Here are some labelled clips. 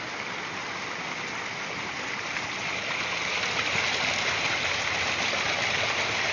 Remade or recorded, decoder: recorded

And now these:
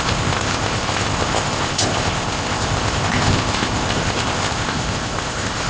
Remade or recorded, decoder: remade, codec, ZipCodec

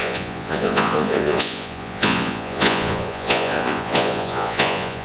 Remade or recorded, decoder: remade, vocoder, Vocos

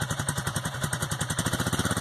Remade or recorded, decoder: remade, vocoder, BigVGAN v2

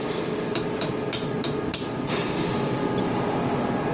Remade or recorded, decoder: recorded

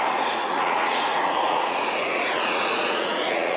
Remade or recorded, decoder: remade, vocoder, Vocos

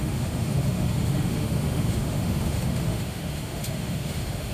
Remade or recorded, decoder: remade, autoencoder, DAC-VAE